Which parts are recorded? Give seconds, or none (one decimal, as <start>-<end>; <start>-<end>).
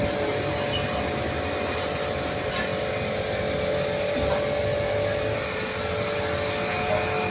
0.0-7.3